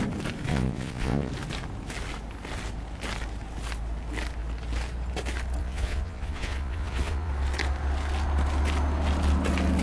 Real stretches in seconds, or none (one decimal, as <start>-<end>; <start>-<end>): 0.0-0.5; 1.3-5.6; 7.3-9.8